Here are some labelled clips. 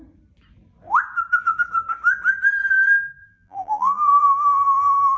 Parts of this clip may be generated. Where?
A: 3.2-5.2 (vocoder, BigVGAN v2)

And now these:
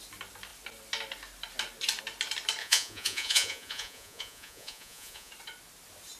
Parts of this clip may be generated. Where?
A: 2.6-5.3 (vocoder, Vocos)

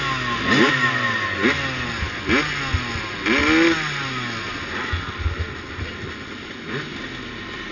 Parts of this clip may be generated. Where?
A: none